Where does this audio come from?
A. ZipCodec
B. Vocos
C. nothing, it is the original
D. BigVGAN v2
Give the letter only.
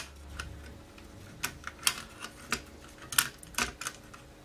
C